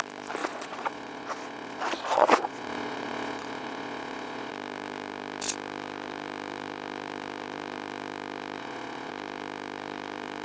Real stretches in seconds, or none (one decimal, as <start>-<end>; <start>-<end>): 0.0-0.4; 4.5-8.6; 9.1-10.4